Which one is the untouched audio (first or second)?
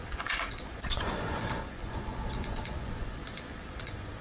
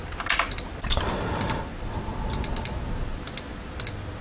second